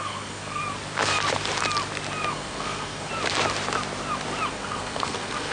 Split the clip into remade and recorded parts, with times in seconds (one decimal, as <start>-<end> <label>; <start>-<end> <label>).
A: 0.0-0.6 remade; 0.6-2.3 recorded; 2.3-3.1 remade; 3.1-4.5 recorded; 4.5-5.5 remade